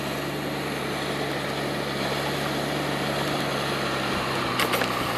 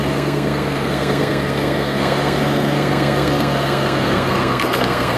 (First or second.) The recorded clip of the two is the first